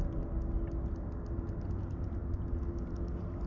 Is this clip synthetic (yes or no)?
no